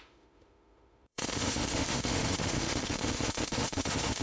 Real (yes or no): no